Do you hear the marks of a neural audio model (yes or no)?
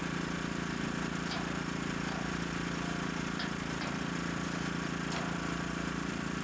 no